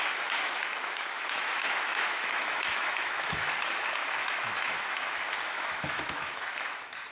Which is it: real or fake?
fake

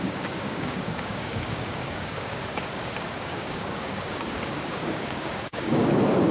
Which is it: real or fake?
fake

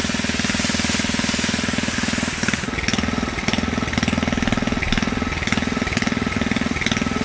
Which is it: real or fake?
real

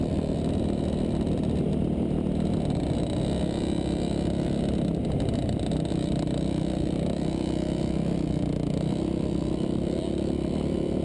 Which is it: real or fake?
real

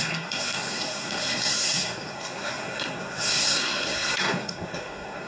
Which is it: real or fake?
fake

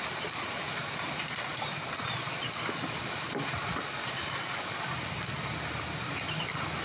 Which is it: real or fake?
real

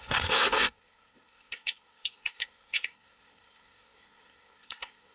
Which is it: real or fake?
fake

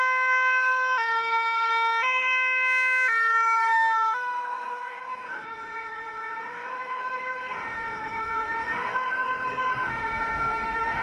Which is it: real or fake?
fake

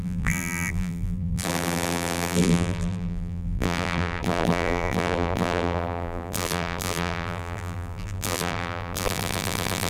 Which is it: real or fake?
fake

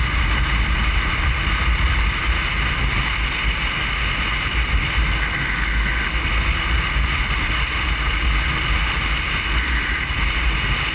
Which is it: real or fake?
real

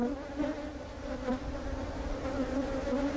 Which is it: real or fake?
real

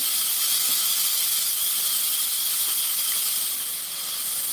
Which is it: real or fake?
real